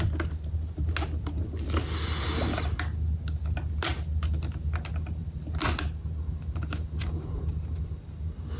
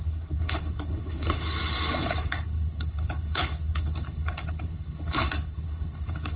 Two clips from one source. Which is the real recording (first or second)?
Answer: first